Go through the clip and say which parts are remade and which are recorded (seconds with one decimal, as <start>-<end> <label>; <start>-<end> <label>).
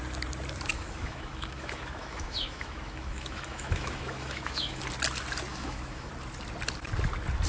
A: 0.0-0.7 recorded; 0.7-4.8 remade; 4.8-5.5 recorded; 5.5-6.1 remade; 6.1-7.5 recorded